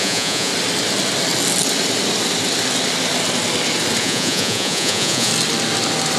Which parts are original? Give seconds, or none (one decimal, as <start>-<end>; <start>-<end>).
0.5-4.0; 5.3-6.2